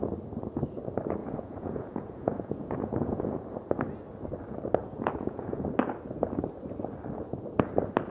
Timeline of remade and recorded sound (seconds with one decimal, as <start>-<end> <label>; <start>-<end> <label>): 0.0-1.2 recorded; 1.2-3.2 remade; 3.2-4.8 recorded; 4.8-5.6 remade; 5.6-8.1 recorded